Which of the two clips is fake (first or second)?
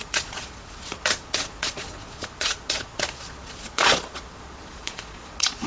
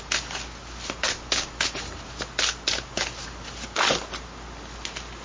first